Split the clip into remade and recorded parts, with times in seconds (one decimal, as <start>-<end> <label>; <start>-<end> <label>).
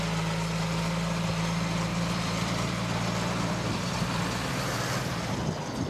0.0-1.9 recorded; 1.9-4.5 remade; 4.5-5.9 recorded